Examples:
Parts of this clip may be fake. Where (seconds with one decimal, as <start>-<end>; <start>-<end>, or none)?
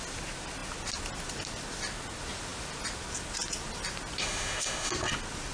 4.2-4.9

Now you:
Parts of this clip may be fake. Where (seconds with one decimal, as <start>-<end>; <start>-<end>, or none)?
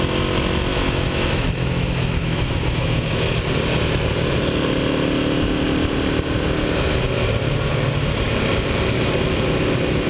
0.7-3.3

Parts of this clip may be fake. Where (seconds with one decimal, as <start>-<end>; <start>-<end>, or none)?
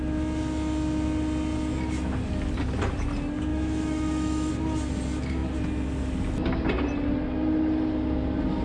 3.5-4.5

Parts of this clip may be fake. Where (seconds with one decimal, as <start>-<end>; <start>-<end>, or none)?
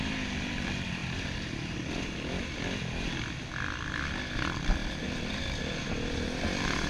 none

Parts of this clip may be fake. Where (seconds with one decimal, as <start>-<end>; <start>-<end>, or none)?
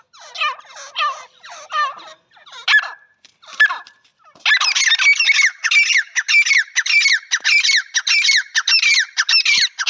none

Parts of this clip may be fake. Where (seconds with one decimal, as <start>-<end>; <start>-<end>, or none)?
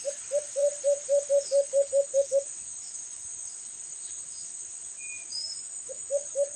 2.1-6.1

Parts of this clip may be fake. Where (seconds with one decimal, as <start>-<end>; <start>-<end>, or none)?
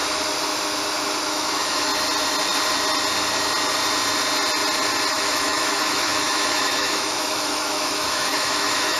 1.3-1.9; 5.1-9.0